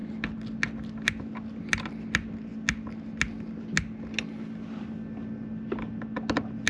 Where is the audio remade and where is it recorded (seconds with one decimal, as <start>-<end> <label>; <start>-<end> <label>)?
0.0-6.7 recorded